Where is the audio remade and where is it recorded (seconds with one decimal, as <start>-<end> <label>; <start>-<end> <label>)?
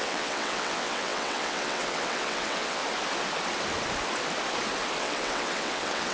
0.0-2.8 remade; 2.8-5.0 recorded; 5.0-6.1 remade